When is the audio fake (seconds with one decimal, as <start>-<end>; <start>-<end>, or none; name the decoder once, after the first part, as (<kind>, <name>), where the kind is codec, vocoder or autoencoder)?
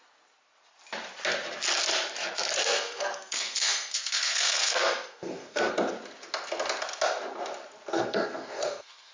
2.6-5.7 (codec, SNAC); 7.9-9.1